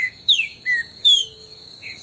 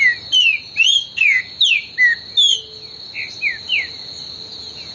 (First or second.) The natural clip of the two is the second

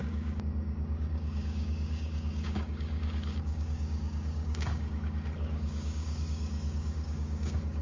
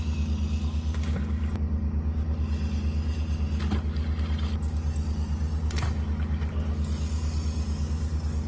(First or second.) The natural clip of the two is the second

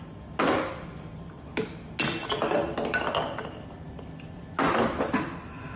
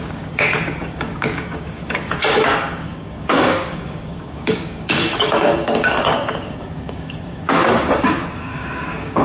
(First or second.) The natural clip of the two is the first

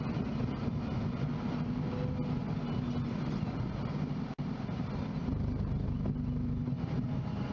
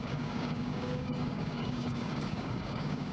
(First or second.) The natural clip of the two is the first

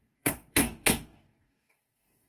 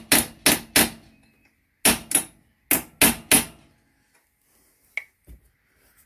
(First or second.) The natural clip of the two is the second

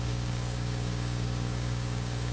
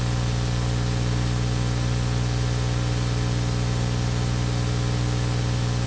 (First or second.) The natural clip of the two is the second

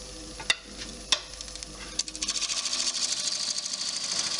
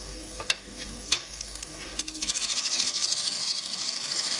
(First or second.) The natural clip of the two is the first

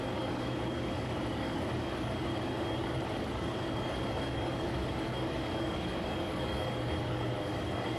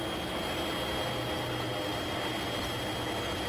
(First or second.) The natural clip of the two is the second